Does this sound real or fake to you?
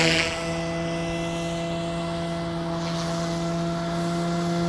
real